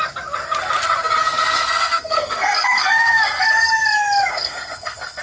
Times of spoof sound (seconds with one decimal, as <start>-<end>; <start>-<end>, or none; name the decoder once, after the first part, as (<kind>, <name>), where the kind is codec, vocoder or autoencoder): 1.2-3.4 (codec, SNAC); 4.3-5.2